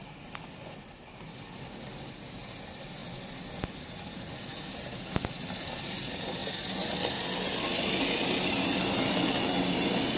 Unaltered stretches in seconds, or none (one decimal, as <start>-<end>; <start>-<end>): 0.0-10.2